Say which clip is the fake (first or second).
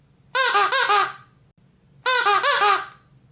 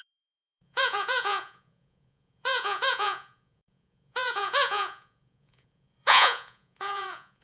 second